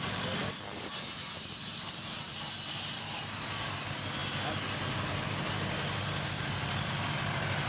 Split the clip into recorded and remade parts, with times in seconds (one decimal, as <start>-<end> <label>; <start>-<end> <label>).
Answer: 0.0-0.4 recorded; 0.4-3.2 remade; 3.2-7.7 recorded